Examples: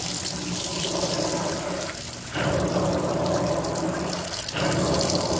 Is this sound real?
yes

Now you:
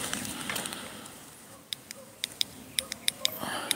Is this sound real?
no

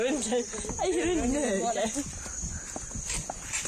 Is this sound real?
yes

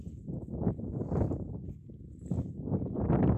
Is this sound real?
yes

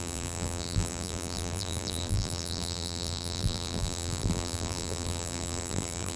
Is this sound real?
no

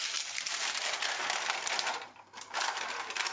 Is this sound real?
no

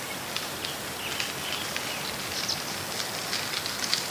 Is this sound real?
yes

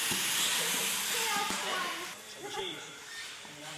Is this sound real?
no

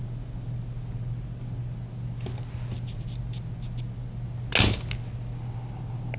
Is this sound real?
yes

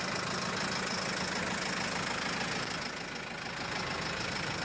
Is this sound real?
yes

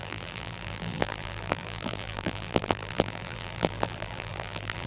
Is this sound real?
no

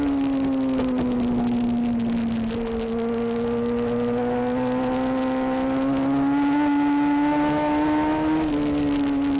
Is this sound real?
yes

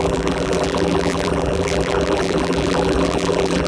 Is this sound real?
no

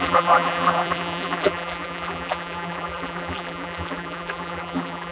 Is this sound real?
no